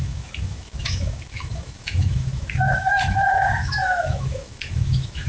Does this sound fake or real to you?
fake